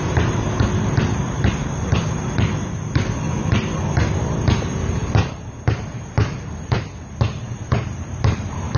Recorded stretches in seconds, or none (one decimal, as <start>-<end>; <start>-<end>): 1.6-4.4